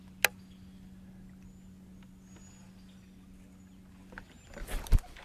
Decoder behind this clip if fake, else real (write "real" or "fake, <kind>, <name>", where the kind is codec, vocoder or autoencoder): real